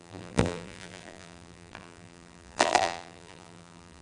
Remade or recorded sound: remade